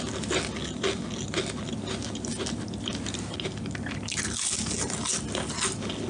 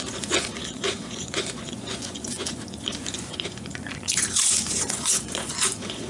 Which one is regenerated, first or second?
second